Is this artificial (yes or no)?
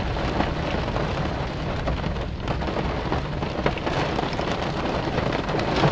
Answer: no